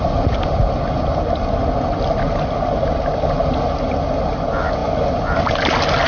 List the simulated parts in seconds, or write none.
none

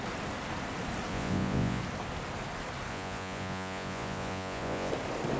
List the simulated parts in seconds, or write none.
1.1-1.8 (vocoder, Vocos); 2.9-4.9